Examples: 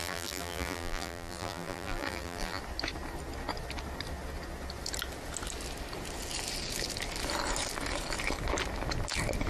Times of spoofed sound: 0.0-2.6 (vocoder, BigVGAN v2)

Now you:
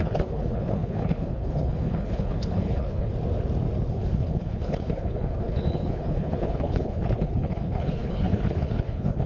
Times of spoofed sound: 0.0-3.1 (codec, HILCodec); 3.9-9.3

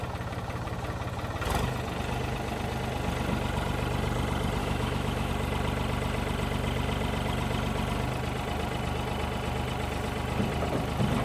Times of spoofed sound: 4.6-5.3 (autoencoder, DAC-VAE)

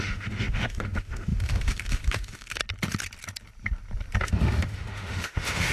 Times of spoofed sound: 0.0-2.6 (autoencoder, DAC-VAE); 4.2-5.7

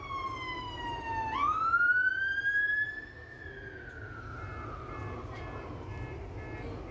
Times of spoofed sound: none

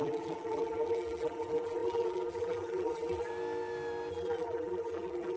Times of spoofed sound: 0.0-3.3 (vocoder, BigVGAN v2); 4.1-5.4